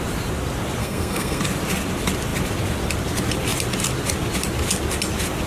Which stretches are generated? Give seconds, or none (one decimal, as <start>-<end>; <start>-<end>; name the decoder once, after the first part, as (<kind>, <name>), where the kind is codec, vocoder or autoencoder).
0.8-1.4 (codec, SNAC)